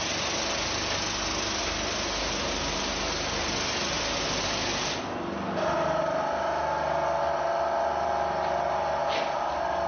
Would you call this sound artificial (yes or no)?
no